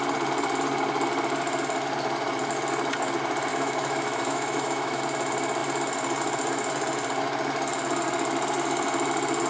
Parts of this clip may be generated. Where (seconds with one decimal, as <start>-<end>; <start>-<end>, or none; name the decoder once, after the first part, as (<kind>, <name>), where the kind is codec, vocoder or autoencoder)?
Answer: 3.5-5.0 (autoencoder, DAC-VAE)

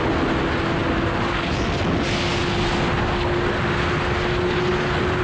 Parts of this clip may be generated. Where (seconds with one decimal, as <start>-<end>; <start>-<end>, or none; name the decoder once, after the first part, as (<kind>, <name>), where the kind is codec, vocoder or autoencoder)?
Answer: 0.8-1.5 (vocoder, BigVGAN v2)

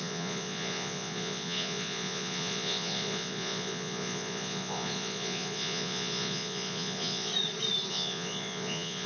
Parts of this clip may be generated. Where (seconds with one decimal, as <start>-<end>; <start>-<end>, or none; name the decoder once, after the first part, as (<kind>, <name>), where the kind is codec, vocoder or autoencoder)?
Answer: 0.0-7.3 (vocoder, Vocos); 7.9-9.1

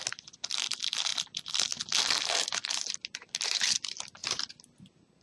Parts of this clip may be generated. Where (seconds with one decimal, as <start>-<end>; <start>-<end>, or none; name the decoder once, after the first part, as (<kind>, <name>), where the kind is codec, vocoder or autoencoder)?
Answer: none

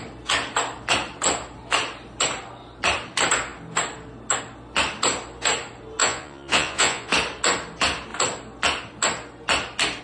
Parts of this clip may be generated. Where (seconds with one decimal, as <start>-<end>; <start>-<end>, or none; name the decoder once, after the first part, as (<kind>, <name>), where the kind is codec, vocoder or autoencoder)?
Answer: 6.0-7.1 (vocoder, Vocos)

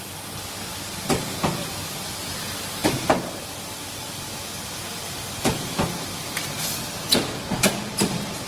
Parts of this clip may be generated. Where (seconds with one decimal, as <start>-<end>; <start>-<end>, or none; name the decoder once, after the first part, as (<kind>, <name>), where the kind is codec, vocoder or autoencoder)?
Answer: none

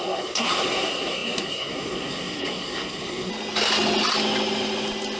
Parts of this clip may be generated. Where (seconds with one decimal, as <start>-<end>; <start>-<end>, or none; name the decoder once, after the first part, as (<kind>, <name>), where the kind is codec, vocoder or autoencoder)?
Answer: 0.0-3.3 (codec, SNAC)

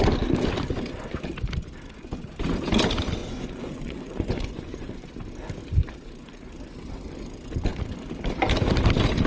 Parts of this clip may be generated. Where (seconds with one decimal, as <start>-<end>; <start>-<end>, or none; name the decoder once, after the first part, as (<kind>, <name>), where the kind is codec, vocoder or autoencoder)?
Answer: 3.2-5.1 (vocoder, Vocos)